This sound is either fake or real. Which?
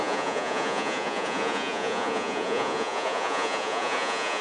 fake